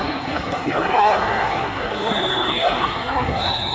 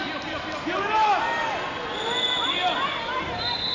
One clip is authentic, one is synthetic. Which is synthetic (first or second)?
first